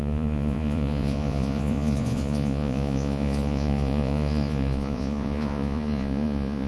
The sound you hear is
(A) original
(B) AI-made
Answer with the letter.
B